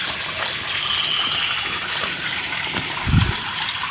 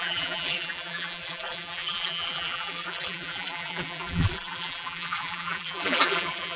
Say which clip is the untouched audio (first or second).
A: first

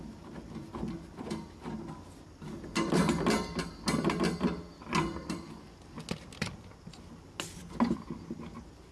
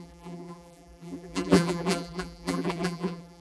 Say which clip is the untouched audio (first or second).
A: first